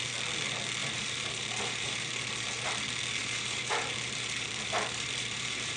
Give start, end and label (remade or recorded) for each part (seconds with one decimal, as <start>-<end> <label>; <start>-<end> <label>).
0.0-0.8 recorded; 0.8-2.7 remade; 2.7-3.2 recorded; 3.2-5.8 remade